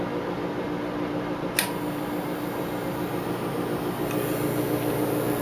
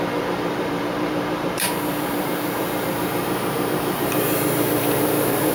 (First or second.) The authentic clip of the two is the first